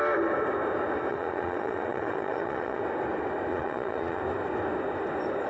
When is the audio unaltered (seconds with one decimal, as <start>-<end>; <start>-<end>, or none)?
0.0-1.1; 2.8-3.5; 4.2-5.5